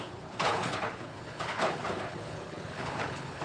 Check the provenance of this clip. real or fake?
fake